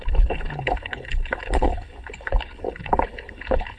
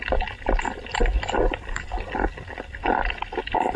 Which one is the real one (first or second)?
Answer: second